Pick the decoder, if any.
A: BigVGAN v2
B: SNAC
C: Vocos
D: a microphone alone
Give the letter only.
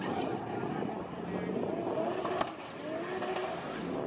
D